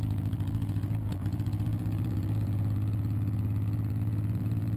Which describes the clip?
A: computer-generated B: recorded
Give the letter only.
A